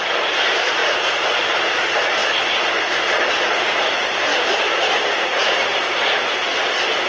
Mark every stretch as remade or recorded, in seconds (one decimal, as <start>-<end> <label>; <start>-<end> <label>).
0.0-0.8 remade; 0.8-1.7 recorded; 1.7-2.2 remade; 2.2-3.5 recorded; 3.5-7.1 remade